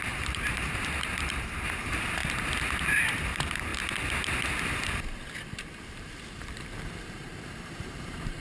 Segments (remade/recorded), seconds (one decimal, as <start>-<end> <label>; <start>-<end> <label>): 0.0-2.2 remade; 2.2-3.0 recorded; 3.0-3.7 remade; 3.7-5.6 recorded; 5.6-8.4 remade